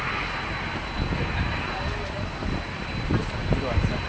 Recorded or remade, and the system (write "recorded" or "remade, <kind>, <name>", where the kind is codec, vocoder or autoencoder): recorded